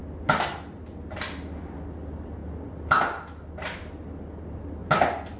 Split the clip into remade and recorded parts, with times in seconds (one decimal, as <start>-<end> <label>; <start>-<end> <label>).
0.0-5.4 recorded